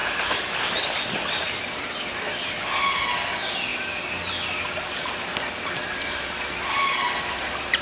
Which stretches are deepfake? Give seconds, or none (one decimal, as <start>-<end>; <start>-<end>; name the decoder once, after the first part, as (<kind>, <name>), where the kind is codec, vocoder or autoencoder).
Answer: none

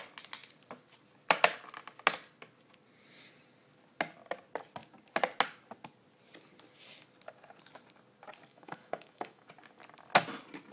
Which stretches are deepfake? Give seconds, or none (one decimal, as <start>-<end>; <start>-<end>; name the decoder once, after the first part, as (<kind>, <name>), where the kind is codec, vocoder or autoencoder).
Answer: 8.5-9.5 (autoencoder, DAC-VAE)

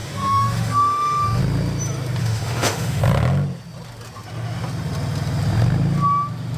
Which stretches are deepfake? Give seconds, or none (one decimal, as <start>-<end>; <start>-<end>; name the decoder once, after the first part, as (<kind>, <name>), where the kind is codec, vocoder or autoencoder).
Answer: 0.0-1.4 (autoencoder, DAC-VAE); 2.2-3.0

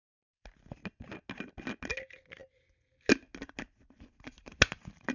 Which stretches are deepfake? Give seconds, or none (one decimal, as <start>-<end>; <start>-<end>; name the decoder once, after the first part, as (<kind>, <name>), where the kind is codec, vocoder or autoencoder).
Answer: none

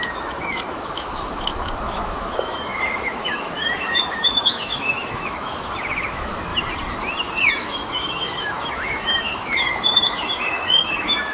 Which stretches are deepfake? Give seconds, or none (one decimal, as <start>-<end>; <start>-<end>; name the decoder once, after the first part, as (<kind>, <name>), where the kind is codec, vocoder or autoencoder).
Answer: 0.0-6.5 (autoencoder, DAC-VAE); 7.5-11.3

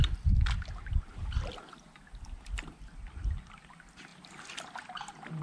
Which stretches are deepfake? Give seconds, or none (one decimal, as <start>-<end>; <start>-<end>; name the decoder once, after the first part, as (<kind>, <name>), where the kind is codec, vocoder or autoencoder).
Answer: none

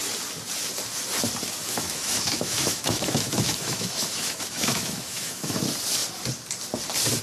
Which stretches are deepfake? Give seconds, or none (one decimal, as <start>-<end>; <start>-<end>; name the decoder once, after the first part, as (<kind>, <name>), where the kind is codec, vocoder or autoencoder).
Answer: 1.6-5.6 (autoencoder, DAC-VAE)